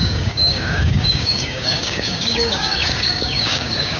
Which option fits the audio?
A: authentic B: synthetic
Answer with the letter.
B